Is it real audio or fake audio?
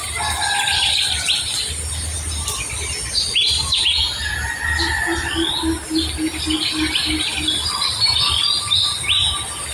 real